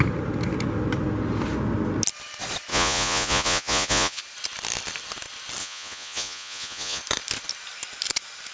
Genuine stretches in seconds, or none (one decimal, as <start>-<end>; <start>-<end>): 0.0-2.7; 4.2-5.6; 7.0-8.5